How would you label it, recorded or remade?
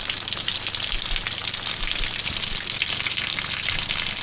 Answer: recorded